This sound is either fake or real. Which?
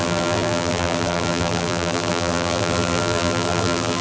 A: fake